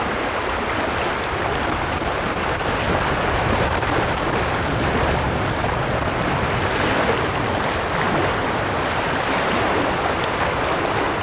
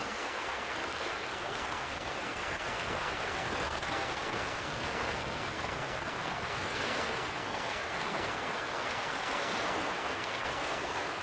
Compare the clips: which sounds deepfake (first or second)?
second